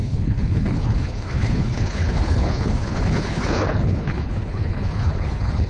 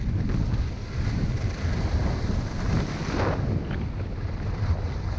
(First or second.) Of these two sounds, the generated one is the first